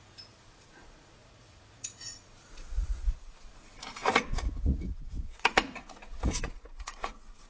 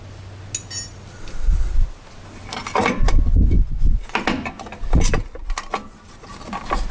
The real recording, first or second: second